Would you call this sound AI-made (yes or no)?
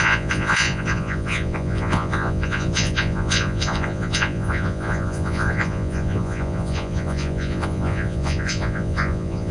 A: yes